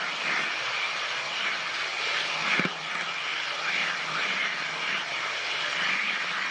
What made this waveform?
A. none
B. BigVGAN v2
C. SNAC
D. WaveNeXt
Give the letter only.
A